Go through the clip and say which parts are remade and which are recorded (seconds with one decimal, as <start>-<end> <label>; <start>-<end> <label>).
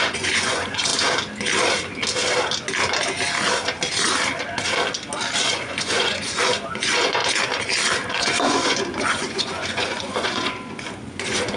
0.0-0.9 remade; 0.9-5.4 recorded; 5.4-7.2 remade; 7.2-8.2 recorded; 8.2-11.6 remade